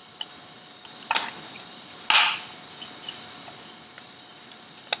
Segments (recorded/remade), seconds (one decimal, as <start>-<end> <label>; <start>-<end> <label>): 0.0-2.0 remade; 2.0-5.0 recorded